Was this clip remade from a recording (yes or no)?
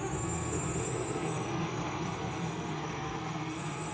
yes